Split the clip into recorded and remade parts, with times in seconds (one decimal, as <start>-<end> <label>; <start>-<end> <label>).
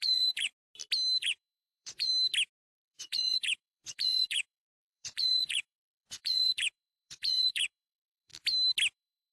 0.0-0.5 remade; 0.5-1.2 recorded; 1.2-2.1 remade; 2.1-2.7 recorded; 2.7-8.3 remade; 8.3-8.9 recorded; 8.9-9.3 remade